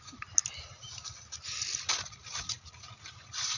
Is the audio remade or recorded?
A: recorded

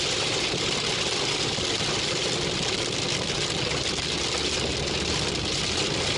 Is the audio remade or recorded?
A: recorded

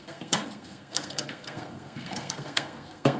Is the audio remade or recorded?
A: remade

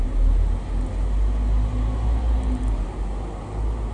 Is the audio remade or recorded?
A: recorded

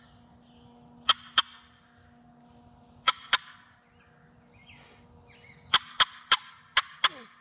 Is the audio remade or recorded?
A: recorded